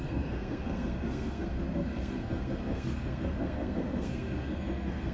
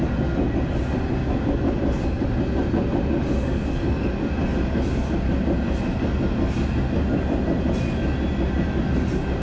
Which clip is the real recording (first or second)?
second